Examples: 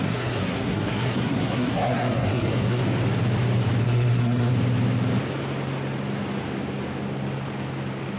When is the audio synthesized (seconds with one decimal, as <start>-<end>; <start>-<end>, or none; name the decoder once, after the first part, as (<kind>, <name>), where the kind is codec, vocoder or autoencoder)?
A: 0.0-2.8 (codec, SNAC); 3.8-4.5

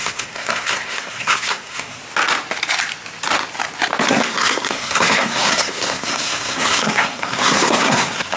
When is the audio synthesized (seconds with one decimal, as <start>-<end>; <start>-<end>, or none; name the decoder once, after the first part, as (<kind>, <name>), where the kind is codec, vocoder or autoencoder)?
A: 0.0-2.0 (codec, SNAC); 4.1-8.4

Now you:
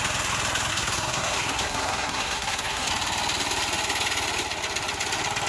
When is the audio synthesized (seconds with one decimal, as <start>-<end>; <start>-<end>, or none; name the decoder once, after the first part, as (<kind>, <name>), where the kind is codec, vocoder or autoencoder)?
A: 0.7-2.9 (codec, SNAC)

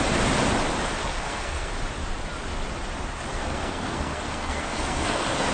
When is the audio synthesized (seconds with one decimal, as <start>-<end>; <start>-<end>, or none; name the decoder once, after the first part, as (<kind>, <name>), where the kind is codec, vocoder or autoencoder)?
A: 1.0-1.7 (codec, SNAC); 3.3-5.5